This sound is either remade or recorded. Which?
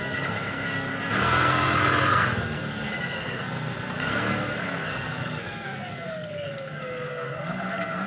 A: remade